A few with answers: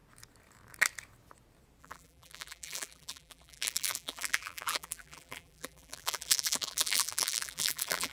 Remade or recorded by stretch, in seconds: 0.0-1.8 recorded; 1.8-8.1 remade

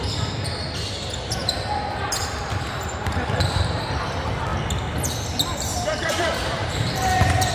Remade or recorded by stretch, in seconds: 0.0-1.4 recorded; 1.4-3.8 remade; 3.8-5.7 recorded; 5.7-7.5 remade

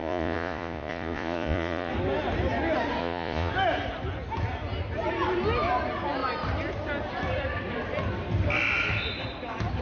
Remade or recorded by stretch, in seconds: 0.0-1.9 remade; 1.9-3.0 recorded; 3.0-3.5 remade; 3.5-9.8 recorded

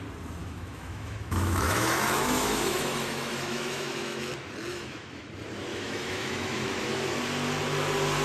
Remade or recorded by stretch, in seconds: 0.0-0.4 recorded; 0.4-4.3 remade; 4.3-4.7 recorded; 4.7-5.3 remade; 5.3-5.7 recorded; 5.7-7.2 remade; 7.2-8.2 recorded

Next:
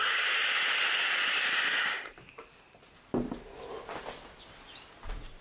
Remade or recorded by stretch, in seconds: 0.0-5.4 recorded